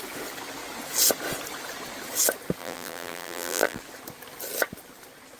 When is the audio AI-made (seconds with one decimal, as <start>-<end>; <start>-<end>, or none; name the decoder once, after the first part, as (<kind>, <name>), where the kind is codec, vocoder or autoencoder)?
2.6-3.8 (vocoder, BigVGAN v2)